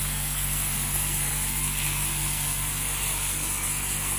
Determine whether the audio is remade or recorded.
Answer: remade